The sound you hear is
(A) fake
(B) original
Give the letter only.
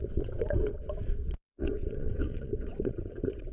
A